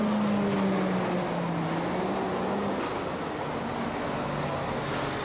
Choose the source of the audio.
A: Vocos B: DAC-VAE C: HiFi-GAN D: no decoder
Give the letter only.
D